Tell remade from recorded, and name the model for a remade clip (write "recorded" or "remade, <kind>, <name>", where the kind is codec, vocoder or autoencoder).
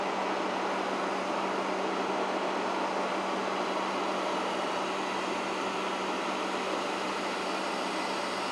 recorded